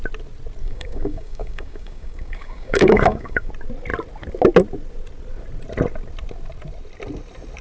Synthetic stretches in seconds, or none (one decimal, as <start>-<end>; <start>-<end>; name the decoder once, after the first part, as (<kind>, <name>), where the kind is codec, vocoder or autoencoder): 0.6-3.5 (codec, DAC)

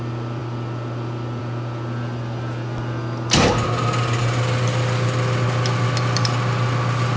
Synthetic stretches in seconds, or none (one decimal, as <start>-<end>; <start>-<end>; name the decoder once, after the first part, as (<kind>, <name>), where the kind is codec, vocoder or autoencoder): none

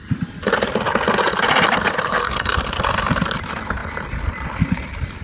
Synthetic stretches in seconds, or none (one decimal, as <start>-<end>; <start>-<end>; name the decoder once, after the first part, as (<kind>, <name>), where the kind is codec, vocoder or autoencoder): 2.2-2.7 (codec, SNAC)